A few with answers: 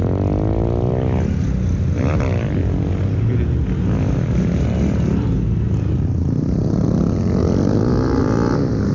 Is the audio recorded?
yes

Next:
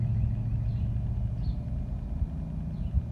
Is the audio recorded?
yes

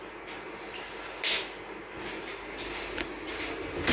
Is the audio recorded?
yes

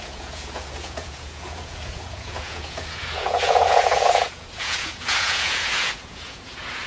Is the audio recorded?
no